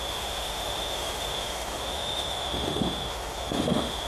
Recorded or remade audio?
remade